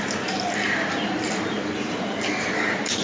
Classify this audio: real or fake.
fake